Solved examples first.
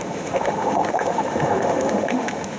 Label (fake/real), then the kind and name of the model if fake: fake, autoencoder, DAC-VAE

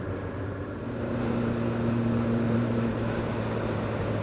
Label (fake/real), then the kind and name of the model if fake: real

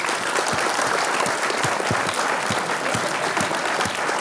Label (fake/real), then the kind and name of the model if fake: real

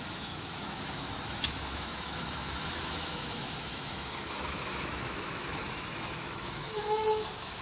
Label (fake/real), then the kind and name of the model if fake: fake, autoencoder, DAC-VAE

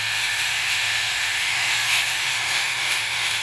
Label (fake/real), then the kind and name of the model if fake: fake, autoencoder, DAC-VAE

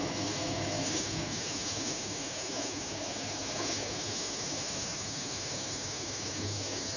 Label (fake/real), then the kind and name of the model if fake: fake, autoencoder, DAC-VAE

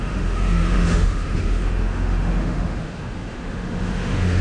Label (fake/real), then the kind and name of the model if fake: fake, autoencoder, DAC-VAE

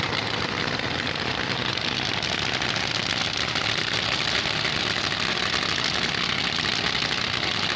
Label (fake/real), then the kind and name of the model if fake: real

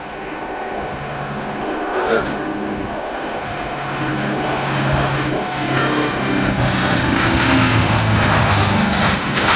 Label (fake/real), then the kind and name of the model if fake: fake, autoencoder, DAC-VAE